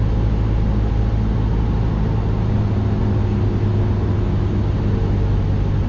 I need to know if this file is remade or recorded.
recorded